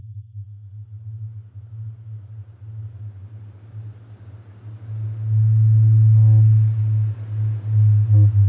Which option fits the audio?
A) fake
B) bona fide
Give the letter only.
B